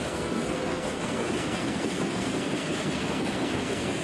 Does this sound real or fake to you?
fake